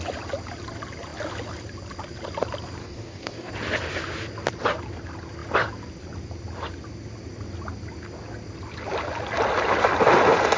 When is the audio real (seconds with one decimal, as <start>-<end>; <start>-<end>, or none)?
0.0-2.8; 3.5-10.6